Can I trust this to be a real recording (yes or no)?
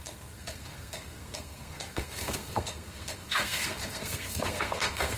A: no